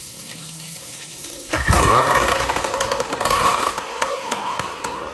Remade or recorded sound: remade